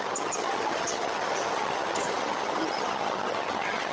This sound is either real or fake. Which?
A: fake